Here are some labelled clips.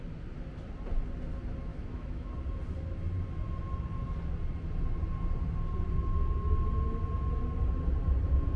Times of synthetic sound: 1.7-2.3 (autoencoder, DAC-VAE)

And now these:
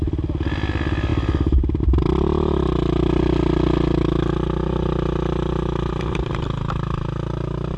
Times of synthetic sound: none

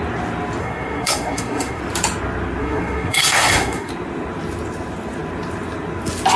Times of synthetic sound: 0.6-1.8 (codec, SNAC); 2.6-3.9